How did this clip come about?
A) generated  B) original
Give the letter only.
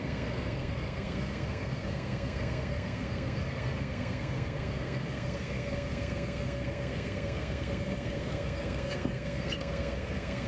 A